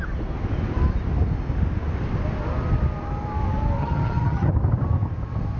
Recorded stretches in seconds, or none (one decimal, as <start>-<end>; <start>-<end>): 0.0-3.8; 4.5-5.6